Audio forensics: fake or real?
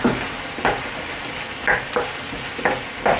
real